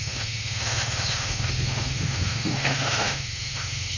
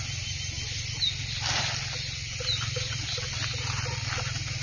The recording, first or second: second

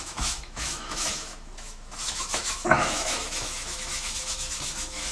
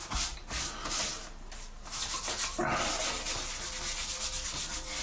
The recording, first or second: second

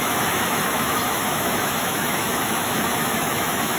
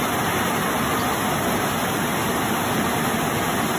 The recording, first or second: second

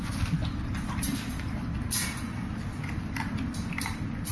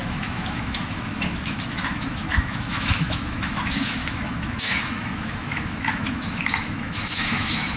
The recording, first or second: first